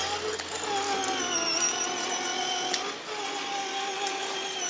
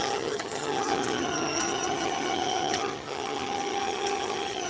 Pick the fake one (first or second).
second